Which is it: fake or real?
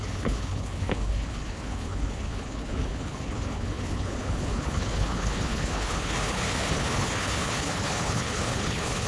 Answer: fake